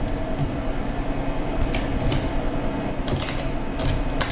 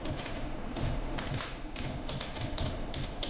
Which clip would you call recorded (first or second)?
first